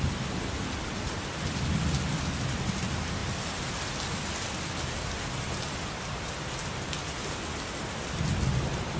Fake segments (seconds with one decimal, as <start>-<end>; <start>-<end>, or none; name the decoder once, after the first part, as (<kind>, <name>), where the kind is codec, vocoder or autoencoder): none